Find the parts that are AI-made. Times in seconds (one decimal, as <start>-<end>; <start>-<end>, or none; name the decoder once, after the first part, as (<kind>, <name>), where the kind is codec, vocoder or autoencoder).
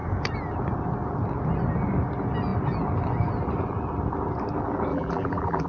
4.9-5.7 (vocoder, BigVGAN v2)